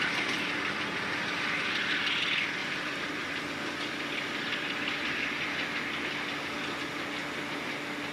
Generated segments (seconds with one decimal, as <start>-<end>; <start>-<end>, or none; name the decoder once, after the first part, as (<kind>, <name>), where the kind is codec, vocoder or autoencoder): 2.6-3.4 (vocoder, BigVGAN v2)